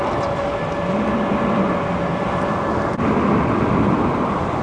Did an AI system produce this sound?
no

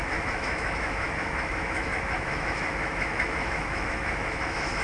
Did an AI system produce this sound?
yes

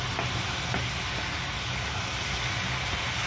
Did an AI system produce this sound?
no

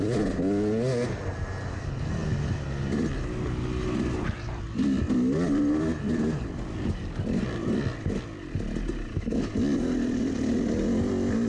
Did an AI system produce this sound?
no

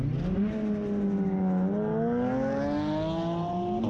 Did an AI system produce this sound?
no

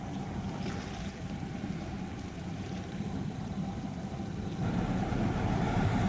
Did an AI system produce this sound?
yes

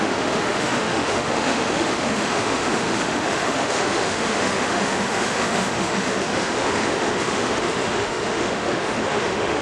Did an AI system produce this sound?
yes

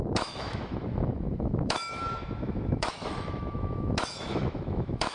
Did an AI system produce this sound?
yes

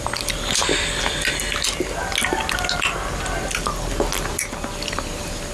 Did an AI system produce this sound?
no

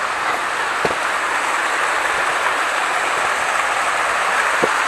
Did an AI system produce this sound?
no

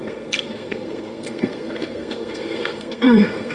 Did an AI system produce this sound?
yes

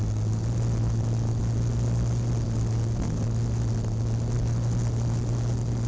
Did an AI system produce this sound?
no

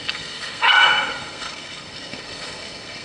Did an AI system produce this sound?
yes